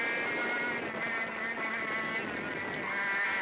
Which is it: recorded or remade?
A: recorded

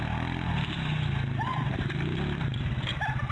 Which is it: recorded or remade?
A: recorded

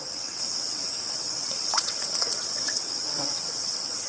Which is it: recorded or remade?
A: remade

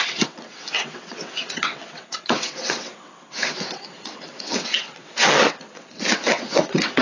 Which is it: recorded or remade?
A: remade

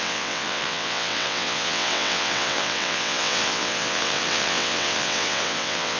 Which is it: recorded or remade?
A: remade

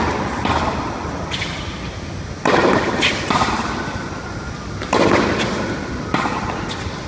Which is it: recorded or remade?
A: recorded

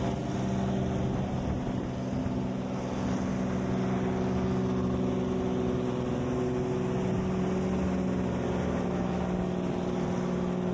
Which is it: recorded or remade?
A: recorded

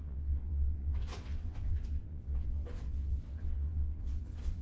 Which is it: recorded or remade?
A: remade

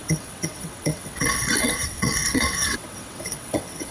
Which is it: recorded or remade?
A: remade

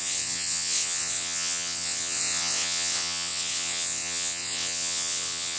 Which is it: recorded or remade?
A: remade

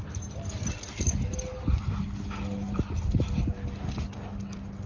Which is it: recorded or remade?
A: recorded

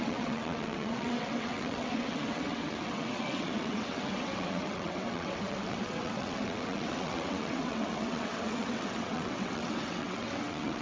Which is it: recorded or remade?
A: remade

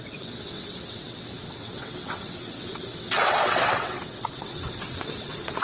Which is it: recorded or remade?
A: remade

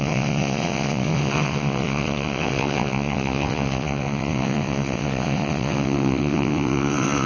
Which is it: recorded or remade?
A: remade